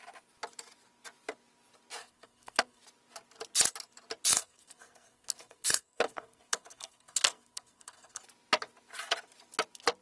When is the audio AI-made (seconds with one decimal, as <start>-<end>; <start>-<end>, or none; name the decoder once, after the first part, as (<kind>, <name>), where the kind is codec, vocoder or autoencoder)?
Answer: 2.0-2.8 (codec, SNAC); 4.3-8.2